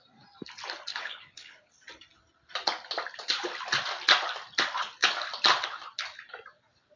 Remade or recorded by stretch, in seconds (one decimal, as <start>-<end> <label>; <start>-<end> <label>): 0.0-0.9 recorded; 0.9-1.7 remade; 1.7-7.0 recorded